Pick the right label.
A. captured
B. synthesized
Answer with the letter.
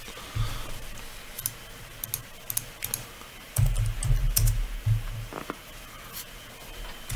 A